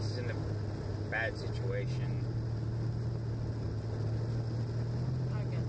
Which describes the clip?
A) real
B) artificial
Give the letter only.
A